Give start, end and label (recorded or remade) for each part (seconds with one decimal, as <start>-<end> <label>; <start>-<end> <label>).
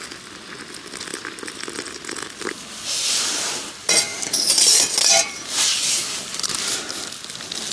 0.0-7.7 recorded